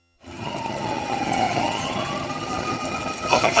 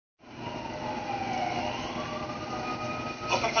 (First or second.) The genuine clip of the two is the second